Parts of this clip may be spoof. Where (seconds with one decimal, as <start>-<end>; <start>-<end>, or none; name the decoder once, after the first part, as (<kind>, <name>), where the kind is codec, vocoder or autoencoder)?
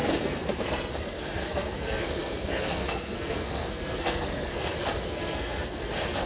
0.0-6.3 (codec, SNAC)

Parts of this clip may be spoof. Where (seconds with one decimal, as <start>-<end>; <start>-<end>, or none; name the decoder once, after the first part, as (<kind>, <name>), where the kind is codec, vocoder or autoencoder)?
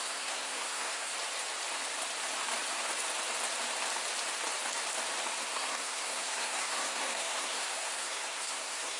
0.0-1.1 (codec, SNAC); 5.4-9.0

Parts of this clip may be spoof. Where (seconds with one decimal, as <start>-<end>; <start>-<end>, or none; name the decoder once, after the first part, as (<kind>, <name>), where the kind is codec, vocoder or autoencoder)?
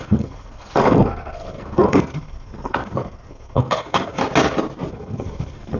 0.0-4.2 (codec, SNAC); 4.9-5.8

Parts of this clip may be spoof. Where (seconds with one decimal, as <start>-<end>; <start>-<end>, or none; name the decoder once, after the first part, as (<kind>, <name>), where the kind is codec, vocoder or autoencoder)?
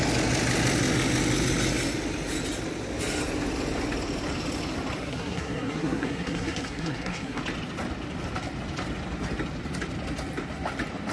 5.0-7.4 (codec, SNAC)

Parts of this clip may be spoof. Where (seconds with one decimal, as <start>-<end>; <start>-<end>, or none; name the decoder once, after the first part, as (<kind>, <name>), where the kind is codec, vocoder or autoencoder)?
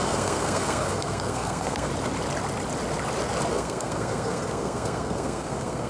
0.0-1.9 (codec, SNAC); 3.5-5.9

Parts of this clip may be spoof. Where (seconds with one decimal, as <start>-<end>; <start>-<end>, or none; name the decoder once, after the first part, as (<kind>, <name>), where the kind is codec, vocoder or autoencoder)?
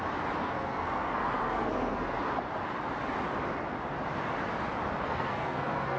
0.4-2.2 (codec, SNAC); 5.0-6.0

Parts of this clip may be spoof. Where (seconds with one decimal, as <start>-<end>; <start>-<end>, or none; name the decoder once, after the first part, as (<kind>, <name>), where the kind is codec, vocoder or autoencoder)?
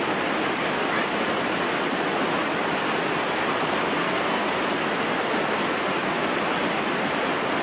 4.0-4.5 (codec, SNAC)